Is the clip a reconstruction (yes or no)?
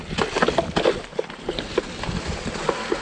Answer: yes